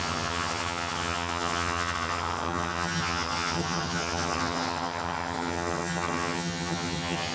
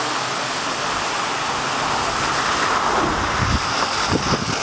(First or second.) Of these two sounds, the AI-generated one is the first